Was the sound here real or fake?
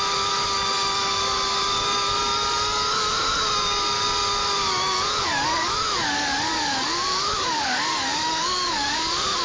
fake